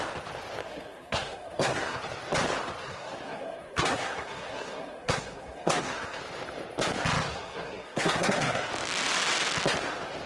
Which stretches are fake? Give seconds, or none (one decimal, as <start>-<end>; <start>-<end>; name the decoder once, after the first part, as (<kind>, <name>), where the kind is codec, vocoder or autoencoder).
0.6-2.0 (codec, SNAC); 2.8-6.2; 7.3-8.7